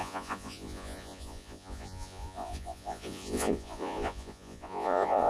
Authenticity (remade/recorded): remade